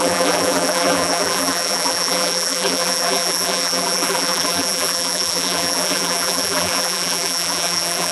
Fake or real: fake